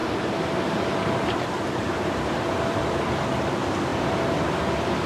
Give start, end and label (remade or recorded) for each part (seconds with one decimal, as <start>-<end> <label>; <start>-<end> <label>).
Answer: 0.0-3.1 remade; 3.1-3.9 recorded; 3.9-4.6 remade; 4.6-5.1 recorded